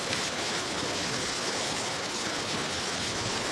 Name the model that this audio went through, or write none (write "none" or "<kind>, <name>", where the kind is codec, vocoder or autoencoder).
codec, HILCodec